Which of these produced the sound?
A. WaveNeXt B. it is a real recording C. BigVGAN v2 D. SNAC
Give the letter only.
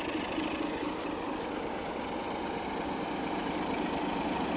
B